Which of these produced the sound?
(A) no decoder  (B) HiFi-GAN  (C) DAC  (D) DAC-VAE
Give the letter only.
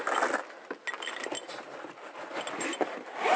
A